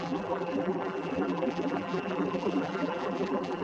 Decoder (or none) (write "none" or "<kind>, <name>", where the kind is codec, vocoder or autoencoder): vocoder, BigVGAN v2